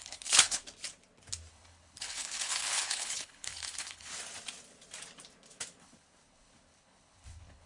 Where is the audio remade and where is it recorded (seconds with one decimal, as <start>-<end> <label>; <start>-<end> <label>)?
0.0-0.6 remade; 0.6-1.5 recorded; 1.5-4.1 remade; 4.1-5.8 recorded; 5.8-7.7 remade